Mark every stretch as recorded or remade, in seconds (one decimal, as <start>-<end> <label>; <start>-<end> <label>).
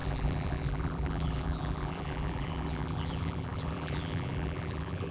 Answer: 0.0-5.1 remade